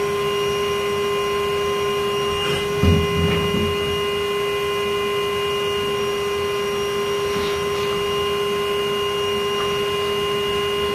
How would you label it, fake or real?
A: real